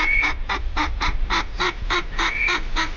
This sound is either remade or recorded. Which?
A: recorded